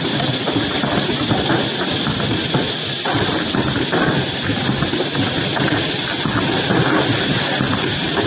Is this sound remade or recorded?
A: remade